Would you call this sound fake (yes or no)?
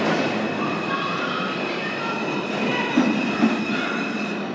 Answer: no